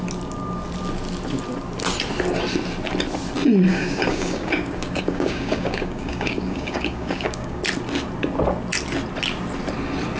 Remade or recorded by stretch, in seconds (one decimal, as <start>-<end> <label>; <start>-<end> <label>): 0.0-3.7 recorded; 3.7-7.6 remade; 7.6-10.2 recorded